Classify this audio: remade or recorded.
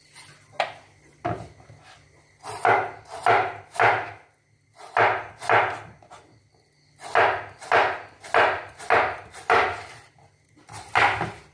recorded